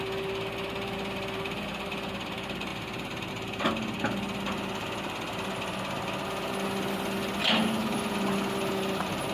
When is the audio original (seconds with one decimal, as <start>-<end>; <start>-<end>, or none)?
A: 0.0-9.3